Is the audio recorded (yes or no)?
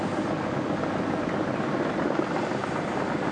yes